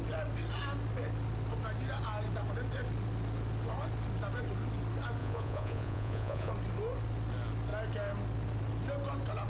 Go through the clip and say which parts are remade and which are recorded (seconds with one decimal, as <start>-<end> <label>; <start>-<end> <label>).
0.0-5.2 recorded; 5.2-6.5 remade; 6.5-9.5 recorded